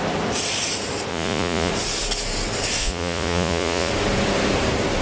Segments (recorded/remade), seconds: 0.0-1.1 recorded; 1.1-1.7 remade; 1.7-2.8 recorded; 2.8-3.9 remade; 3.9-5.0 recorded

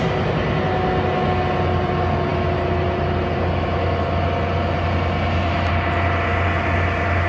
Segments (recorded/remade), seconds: 0.0-7.3 recorded